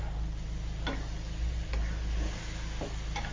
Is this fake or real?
real